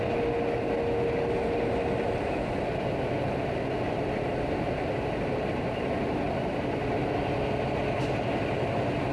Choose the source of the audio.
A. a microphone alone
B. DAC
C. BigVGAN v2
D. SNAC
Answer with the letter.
A